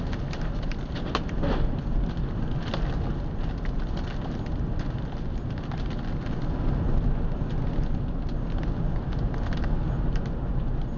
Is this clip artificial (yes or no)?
no